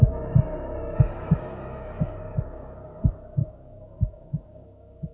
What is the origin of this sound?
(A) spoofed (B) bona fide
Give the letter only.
A